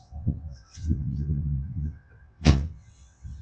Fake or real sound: fake